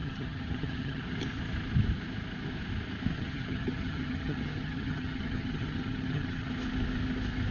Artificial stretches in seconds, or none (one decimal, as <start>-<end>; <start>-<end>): 0.0-1.0; 3.1-6.5